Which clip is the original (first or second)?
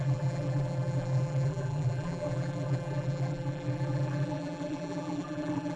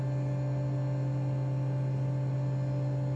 second